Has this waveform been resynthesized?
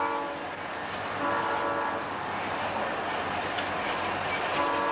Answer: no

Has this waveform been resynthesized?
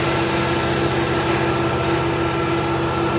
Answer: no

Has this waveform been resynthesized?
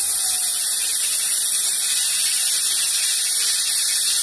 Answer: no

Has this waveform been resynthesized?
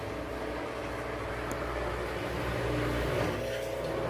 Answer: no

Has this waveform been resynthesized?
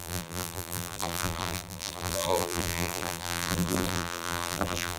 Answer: yes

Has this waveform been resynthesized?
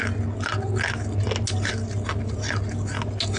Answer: no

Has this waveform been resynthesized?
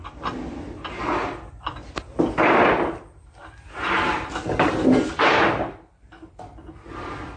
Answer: no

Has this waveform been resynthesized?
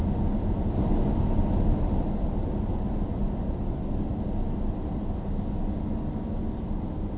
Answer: no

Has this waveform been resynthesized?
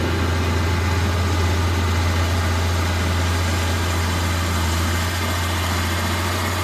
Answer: no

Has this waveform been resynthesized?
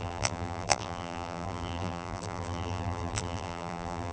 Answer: yes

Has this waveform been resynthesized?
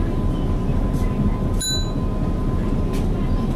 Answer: no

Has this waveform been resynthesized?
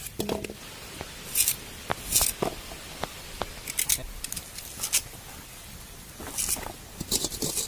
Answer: no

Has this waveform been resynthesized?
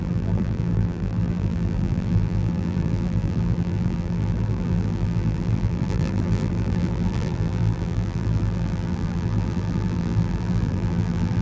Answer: yes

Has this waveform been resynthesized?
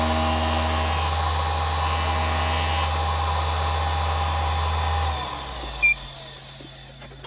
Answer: no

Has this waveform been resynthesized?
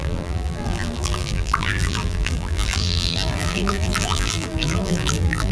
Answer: yes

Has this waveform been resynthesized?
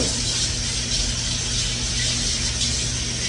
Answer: no